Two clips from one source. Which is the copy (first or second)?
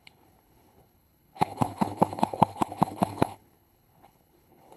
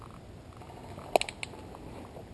first